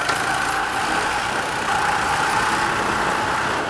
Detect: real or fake real